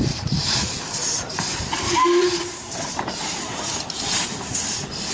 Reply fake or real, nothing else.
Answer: fake